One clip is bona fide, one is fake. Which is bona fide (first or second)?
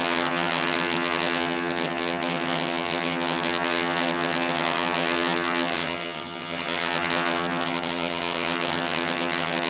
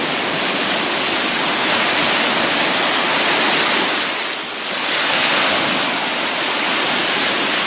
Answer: second